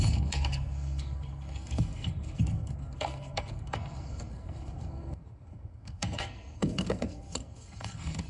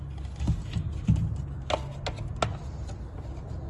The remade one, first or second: first